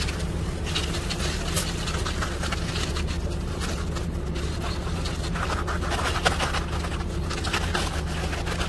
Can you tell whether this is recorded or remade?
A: recorded